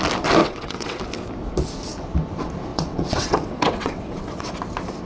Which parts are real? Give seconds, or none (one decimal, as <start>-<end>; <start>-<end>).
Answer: 0.0-0.4; 1.0-2.7; 4.5-5.1

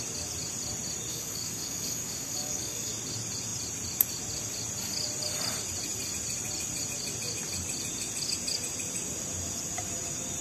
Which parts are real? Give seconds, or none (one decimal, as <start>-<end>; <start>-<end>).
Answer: 0.0-1.1; 2.9-10.4